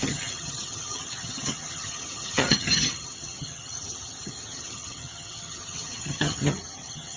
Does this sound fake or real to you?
fake